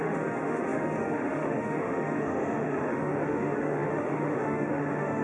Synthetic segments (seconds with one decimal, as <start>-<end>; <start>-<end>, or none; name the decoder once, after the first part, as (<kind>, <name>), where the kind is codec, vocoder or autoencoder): 0.0-5.2 (autoencoder, DAC-VAE)